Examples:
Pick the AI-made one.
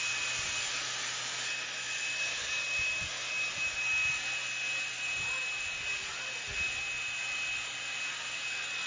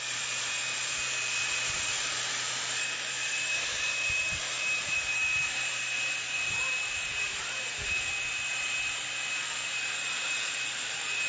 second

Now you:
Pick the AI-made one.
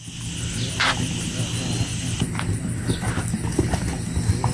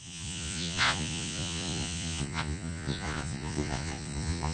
second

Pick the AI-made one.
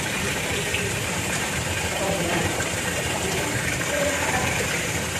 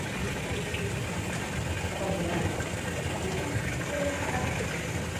first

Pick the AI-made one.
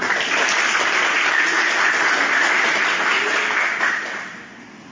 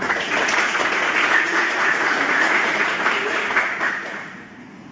second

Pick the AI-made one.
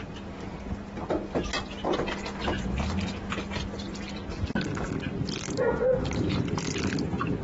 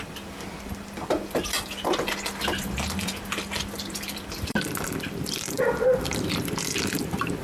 second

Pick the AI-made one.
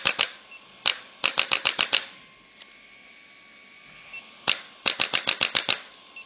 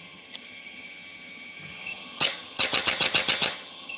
second